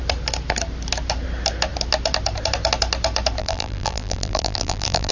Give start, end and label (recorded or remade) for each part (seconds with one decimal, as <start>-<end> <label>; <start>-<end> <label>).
0.0-3.4 recorded; 3.4-5.1 remade